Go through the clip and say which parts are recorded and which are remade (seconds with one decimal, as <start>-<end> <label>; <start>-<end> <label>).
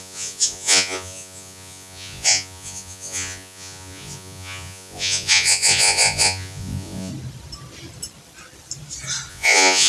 0.0-7.1 remade; 7.1-9.3 recorded; 9.3-9.9 remade